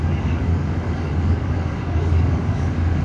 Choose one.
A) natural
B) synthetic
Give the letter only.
B